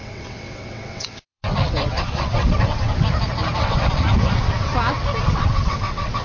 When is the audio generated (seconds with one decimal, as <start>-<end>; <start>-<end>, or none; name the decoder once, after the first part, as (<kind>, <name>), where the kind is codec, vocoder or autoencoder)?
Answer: 0.0-2.9 (vocoder, WaveNeXt); 3.6-4.7; 5.3-6.2

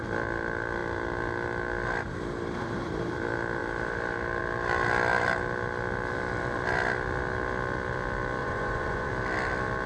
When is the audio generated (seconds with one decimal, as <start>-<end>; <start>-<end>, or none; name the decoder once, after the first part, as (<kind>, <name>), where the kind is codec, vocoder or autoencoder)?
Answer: 8.4-9.1 (vocoder, Vocos)

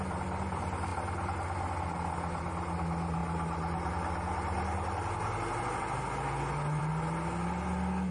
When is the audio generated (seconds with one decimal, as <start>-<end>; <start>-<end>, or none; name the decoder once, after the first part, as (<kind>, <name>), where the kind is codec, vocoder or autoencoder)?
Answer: none

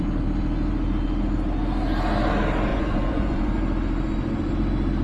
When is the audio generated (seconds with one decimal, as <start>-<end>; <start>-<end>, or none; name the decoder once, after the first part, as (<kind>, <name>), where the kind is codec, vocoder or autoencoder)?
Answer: 2.7-3.5 (vocoder, Vocos)